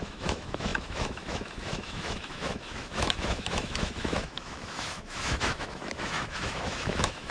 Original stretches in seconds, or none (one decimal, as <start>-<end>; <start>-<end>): none